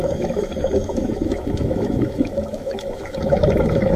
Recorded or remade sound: remade